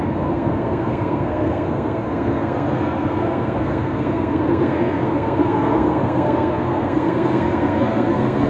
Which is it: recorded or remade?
remade